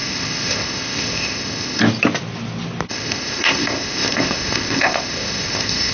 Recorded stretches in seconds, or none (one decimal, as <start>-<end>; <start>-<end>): 1.8-2.9